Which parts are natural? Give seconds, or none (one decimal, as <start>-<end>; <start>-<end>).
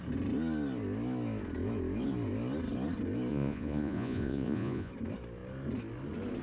0.0-3.3; 4.9-6.4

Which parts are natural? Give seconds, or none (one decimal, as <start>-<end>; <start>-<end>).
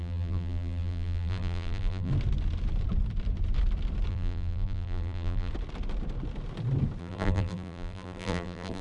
2.1-4.1; 5.5-7.0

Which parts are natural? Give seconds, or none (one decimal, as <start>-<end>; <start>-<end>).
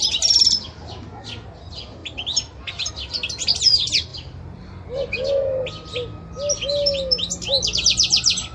0.0-2.0; 2.9-8.5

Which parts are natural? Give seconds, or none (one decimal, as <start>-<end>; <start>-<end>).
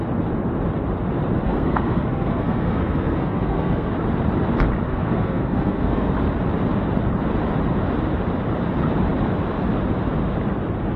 0.0-1.4; 3.9-4.9; 6.1-11.0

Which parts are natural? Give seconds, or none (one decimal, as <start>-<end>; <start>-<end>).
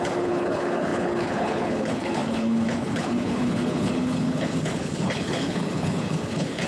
none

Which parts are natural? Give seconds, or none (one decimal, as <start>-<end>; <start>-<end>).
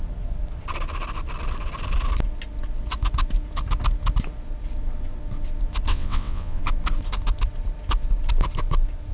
0.0-5.9; 6.6-9.1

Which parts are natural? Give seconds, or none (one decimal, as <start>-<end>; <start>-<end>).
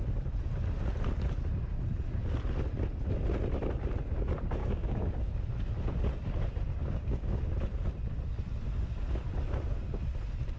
0.0-4.6; 5.3-6.8; 7.4-10.6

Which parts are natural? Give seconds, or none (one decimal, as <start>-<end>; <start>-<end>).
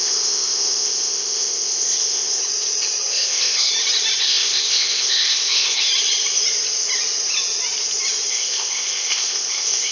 2.4-3.1; 3.7-4.2; 5.9-8.3